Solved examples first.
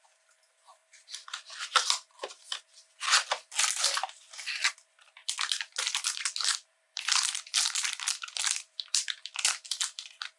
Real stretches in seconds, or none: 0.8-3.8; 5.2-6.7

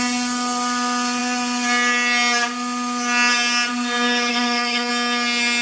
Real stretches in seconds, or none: 0.0-4.3; 4.9-5.6

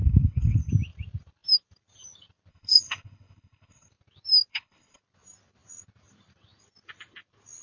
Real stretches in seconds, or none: 0.7-2.5; 3.9-4.5; 5.0-7.6

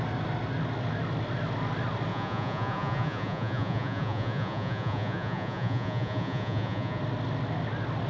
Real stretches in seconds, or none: 0.0-2.1; 7.0-8.1

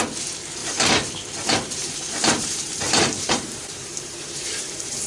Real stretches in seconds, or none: 0.0-0.6; 1.1-1.8